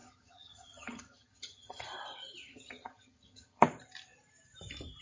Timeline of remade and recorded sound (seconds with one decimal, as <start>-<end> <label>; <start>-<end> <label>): 0.0-1.8 remade; 1.8-2.4 recorded; 2.4-3.6 remade; 3.6-5.0 recorded